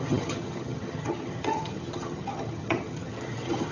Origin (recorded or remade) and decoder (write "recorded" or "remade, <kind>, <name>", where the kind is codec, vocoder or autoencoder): remade, vocoder, HiFi-GAN